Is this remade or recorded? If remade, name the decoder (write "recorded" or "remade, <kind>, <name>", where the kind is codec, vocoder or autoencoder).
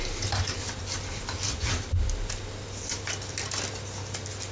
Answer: recorded